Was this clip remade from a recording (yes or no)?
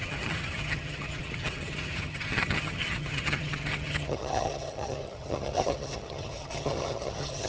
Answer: yes